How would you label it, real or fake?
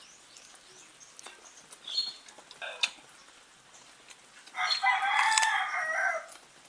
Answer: real